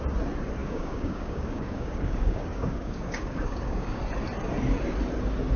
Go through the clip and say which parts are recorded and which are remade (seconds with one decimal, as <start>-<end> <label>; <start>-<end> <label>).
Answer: 0.0-0.6 recorded; 0.6-4.0 remade; 4.0-5.6 recorded